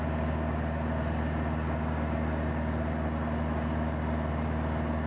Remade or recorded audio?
recorded